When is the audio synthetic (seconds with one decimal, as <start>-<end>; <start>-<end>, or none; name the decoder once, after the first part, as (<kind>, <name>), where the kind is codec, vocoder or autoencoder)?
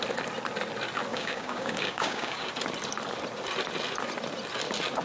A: 1.1-2.5 (codec, DAC)